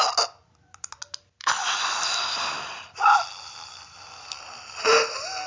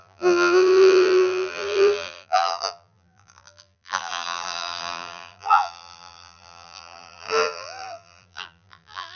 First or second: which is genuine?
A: first